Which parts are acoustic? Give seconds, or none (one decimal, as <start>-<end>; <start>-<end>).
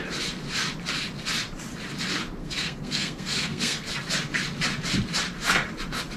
0.0-2.4; 3.9-6.2